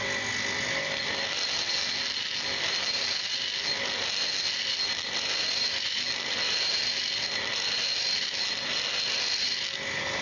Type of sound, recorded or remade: recorded